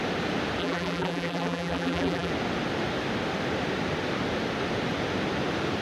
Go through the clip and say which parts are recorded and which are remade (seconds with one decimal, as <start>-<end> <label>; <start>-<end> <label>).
0.0-0.6 recorded; 0.6-2.3 remade; 2.3-5.8 recorded